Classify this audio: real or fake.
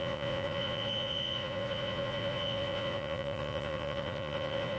fake